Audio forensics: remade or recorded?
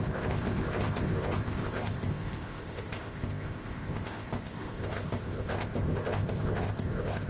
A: remade